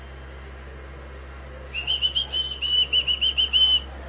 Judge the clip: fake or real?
real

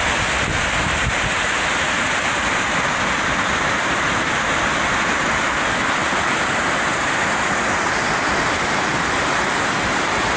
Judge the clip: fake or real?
real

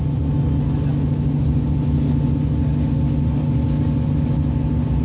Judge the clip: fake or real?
real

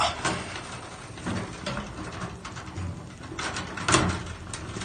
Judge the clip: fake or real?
real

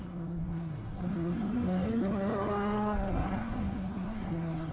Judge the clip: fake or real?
fake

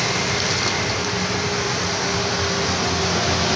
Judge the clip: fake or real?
real